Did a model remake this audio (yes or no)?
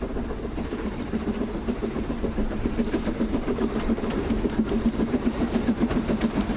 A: yes